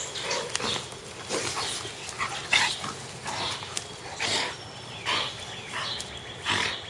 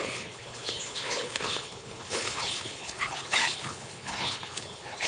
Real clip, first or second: first